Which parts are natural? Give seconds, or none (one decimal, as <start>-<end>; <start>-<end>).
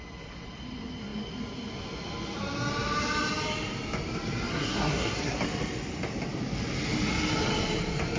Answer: 0.0-4.5; 5.4-8.2